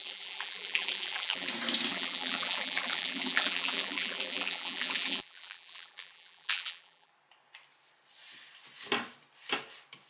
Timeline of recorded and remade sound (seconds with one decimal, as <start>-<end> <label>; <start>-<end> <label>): 0.0-1.5 remade; 1.5-1.9 recorded; 1.9-7.1 remade; 7.1-10.1 recorded